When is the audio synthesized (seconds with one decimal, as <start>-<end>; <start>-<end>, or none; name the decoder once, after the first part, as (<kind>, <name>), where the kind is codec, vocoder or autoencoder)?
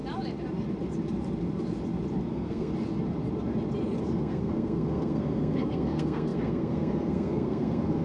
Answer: 2.3-2.7 (codec, SNAC); 4.0-8.0